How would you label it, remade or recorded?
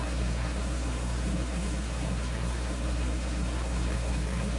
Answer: remade